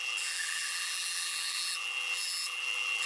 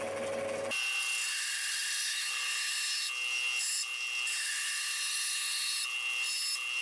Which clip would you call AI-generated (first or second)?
first